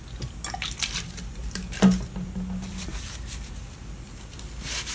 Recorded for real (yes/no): yes